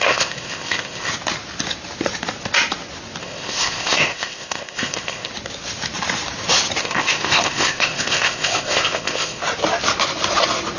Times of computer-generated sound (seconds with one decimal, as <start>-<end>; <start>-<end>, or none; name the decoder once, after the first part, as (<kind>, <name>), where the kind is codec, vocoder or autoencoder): 0.0-1.1 (codec, ZipCodec); 3.2-5.3; 6.8-9.4